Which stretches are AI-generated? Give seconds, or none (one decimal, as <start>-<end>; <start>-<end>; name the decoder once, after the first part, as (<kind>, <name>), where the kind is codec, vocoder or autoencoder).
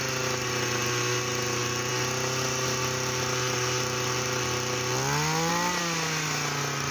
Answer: none